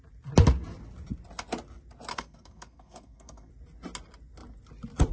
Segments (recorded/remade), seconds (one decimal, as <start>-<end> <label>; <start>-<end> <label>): 0.0-2.1 recorded; 2.1-3.5 remade; 3.5-5.1 recorded